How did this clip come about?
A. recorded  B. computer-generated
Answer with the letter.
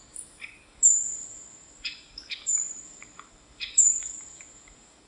B